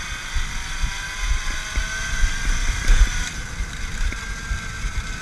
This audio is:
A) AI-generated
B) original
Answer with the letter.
B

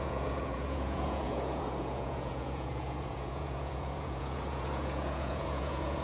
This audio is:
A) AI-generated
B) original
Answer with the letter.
A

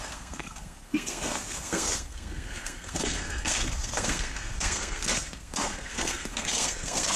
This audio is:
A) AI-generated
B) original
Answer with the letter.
A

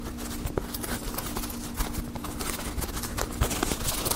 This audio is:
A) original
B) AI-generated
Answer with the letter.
A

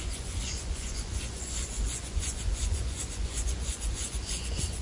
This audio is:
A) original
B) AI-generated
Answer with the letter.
B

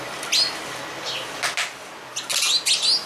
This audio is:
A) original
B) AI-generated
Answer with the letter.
A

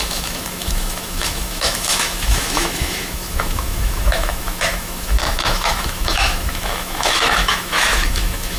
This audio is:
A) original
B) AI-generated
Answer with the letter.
B